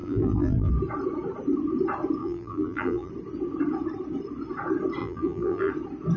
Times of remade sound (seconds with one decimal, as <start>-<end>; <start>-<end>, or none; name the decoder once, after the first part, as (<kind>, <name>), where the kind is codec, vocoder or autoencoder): 0.0-0.7 (vocoder, BigVGAN v2); 2.2-3.1; 5.0-5.7